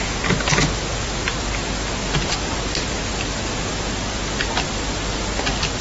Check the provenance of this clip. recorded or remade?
recorded